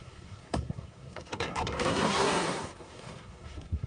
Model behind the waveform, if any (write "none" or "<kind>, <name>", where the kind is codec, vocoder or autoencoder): codec, SNAC